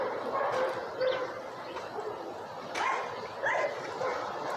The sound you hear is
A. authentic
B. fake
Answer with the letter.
A